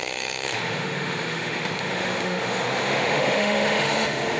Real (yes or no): no